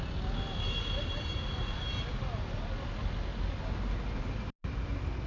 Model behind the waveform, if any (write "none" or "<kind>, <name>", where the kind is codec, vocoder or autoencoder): none